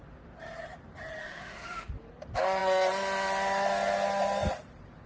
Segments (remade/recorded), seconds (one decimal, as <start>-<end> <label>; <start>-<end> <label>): 0.0-1.2 recorded; 1.2-1.9 remade; 1.9-5.1 recorded